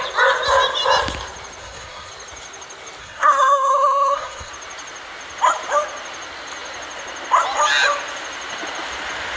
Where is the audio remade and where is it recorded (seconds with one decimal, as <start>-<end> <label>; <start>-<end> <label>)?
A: 0.0-1.6 recorded; 1.6-2.1 remade; 2.1-3.0 recorded; 3.0-4.5 remade; 4.5-9.4 recorded